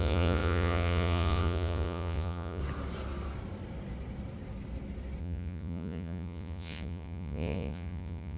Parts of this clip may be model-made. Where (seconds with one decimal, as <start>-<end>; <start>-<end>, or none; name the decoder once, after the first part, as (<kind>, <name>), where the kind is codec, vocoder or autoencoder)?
0.0-2.6 (vocoder, Vocos); 5.2-8.4